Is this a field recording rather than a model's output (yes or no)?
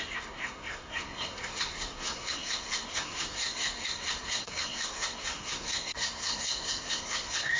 no